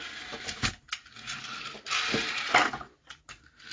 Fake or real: real